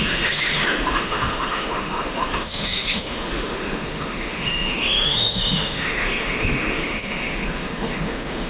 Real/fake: fake